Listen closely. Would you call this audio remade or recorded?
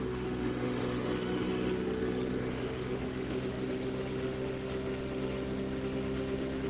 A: remade